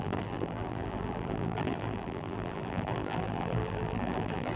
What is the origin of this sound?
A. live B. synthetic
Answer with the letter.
B